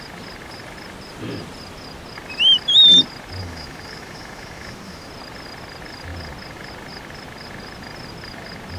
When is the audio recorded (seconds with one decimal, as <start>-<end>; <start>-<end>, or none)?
0.0-3.4; 5.1-8.8